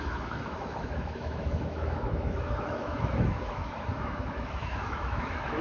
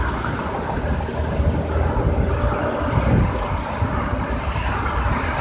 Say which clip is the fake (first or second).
first